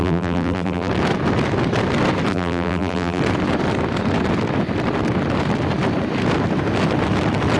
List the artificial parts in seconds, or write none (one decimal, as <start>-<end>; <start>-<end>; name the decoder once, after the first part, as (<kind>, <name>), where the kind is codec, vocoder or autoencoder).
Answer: 0.0-0.9 (vocoder, BigVGAN v2); 2.3-3.2